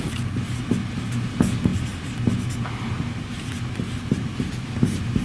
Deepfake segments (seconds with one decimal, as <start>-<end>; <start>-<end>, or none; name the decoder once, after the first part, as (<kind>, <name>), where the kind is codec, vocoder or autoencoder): none